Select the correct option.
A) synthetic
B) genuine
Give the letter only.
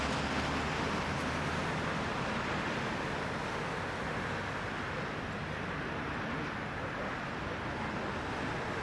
B